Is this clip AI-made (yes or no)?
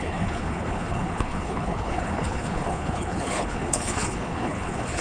yes